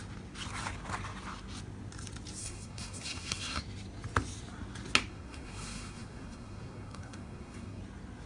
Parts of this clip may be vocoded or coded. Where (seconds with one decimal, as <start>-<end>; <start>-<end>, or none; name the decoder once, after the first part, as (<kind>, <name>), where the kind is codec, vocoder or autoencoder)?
2.4-3.6 (codec, SNAC); 5.1-7.8